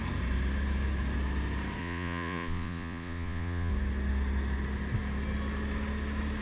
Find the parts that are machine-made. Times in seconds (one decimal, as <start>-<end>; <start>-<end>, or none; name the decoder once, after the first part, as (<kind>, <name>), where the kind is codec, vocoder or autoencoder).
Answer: 1.8-3.7 (vocoder, Vocos)